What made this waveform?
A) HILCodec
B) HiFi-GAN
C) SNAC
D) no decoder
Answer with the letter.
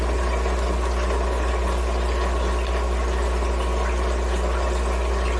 D